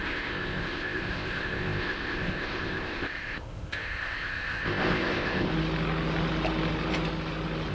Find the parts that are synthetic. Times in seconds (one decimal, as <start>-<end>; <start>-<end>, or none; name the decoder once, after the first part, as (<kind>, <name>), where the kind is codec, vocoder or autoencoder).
0.0-5.5 (codec, ZipCodec)